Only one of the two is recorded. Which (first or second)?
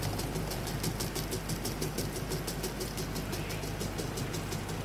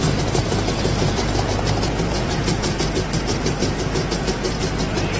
first